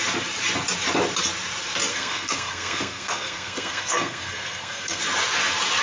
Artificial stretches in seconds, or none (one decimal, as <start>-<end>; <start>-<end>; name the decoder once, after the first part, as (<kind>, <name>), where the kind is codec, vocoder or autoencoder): 1.9-5.0 (codec, SNAC)